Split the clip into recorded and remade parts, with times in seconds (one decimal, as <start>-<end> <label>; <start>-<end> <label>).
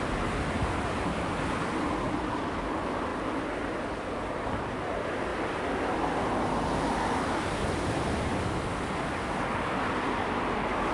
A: 0.0-10.9 recorded